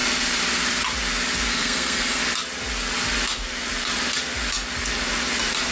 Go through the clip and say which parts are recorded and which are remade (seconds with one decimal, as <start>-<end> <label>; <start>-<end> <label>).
0.0-1.5 recorded; 1.5-2.2 remade; 2.2-5.7 recorded

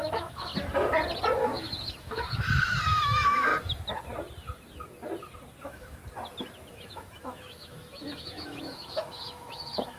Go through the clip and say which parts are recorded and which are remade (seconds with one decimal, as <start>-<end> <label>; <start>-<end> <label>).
0.0-0.5 remade; 0.5-1.4 recorded; 1.4-3.5 remade; 3.5-5.6 recorded; 5.6-6.0 remade; 6.0-6.7 recorded; 6.7-10.0 remade

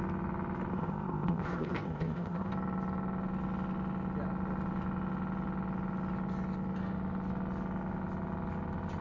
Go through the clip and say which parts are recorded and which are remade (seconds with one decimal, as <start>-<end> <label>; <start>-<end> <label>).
0.0-0.7 recorded; 0.7-2.5 remade; 2.5-9.0 recorded